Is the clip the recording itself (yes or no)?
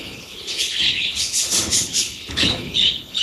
no